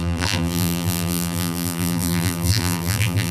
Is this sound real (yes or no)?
no